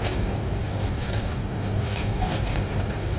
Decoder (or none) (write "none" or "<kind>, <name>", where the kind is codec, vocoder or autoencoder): codec, DAC